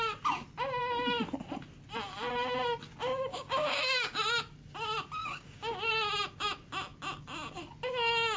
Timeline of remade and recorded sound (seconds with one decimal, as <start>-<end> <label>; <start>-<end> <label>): 0.0-3.3 recorded; 3.3-4.2 remade; 4.2-5.2 recorded; 5.2-5.9 remade; 5.9-8.4 recorded